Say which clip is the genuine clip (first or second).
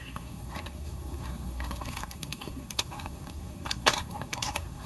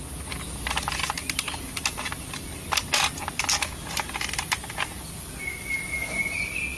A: second